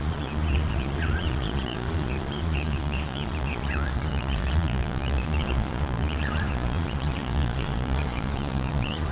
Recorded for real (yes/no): no